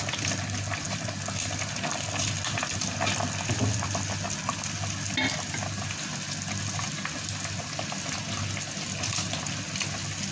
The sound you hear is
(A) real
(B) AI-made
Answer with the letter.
A